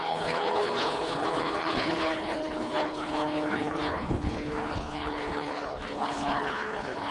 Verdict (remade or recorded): remade